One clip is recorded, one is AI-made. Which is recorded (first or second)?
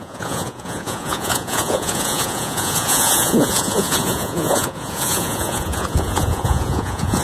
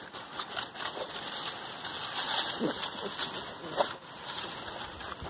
second